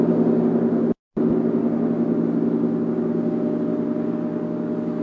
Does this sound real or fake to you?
real